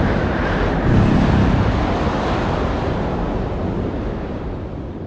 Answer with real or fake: real